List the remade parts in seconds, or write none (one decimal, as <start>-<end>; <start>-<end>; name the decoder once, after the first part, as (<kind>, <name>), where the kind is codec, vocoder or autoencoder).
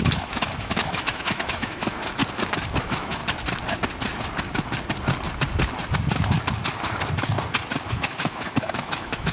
0.0-2.2 (autoencoder, DAC-VAE); 2.8-3.2; 7.9-9.3